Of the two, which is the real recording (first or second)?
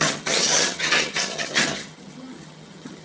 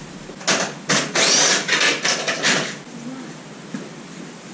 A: second